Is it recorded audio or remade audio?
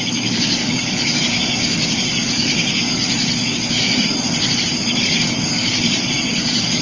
remade